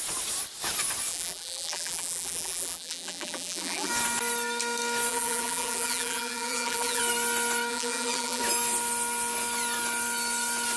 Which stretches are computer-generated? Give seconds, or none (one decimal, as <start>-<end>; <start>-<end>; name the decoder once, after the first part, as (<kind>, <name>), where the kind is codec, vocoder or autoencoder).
1.1-3.9 (vocoder, BigVGAN v2); 5.1-7.0; 7.7-8.4